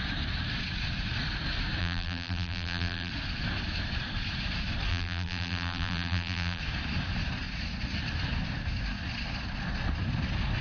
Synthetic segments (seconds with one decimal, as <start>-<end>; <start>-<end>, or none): 1.8-3.1; 4.9-6.6